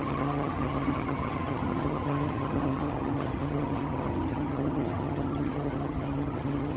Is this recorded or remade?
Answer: remade